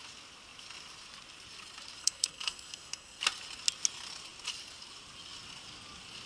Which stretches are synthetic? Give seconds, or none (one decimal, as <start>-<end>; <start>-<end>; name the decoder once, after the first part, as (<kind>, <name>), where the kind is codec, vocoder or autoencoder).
2.0-3.2 (codec, SNAC)